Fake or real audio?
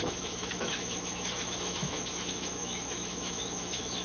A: fake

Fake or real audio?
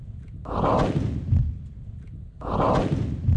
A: real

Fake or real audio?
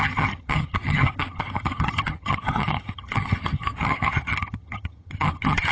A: fake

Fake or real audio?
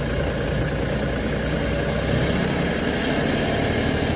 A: real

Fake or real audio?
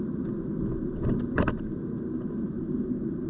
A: real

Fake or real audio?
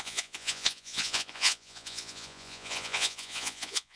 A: fake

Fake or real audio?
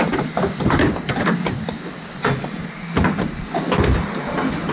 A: real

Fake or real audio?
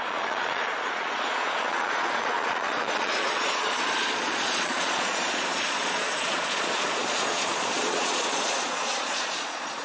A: fake